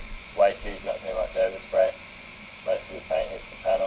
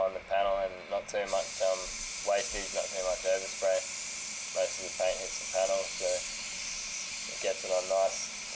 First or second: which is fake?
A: first